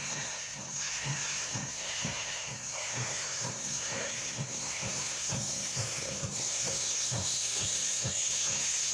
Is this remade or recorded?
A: remade